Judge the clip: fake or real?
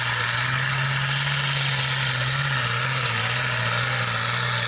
real